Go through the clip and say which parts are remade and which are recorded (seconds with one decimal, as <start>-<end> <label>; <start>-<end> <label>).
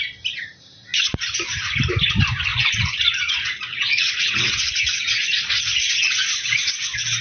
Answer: 0.0-2.5 recorded; 2.5-6.8 remade; 6.8-7.2 recorded